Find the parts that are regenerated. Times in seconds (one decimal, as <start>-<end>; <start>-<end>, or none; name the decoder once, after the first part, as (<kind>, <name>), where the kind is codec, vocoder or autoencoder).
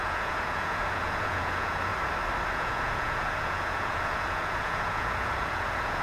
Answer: 0.0-1.9 (vocoder, Vocos); 2.5-6.0